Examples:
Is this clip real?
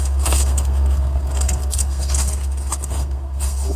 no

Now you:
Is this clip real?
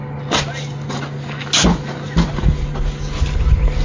yes